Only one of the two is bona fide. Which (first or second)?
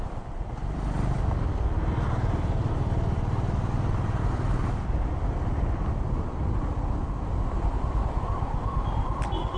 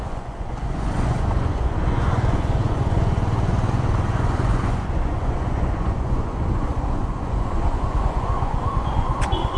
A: first